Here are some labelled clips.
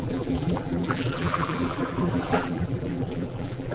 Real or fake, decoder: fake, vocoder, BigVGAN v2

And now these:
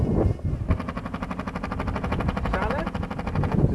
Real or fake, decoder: real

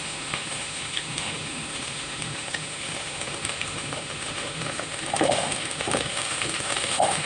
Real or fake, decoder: fake, autoencoder, DAC-VAE